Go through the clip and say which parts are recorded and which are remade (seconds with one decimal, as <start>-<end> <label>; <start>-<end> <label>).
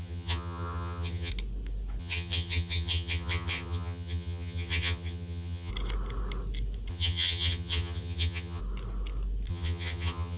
0.0-1.3 remade; 1.3-2.0 recorded; 2.0-5.7 remade; 5.7-6.9 recorded; 6.9-8.6 remade; 8.6-9.5 recorded; 9.5-10.4 remade